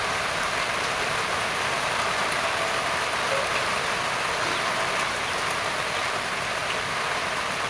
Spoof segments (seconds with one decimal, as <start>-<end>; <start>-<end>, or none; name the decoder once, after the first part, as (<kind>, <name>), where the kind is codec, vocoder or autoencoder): none